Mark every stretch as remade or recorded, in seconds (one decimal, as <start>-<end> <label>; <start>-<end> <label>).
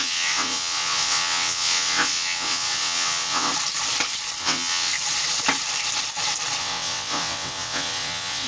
0.0-3.5 remade; 3.5-4.4 recorded; 4.4-4.9 remade; 4.9-6.6 recorded; 6.6-8.5 remade